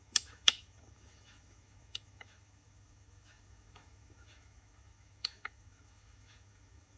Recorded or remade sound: remade